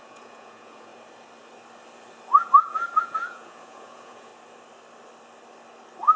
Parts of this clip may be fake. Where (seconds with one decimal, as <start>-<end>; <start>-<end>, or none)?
0.0-0.9; 3.0-4.3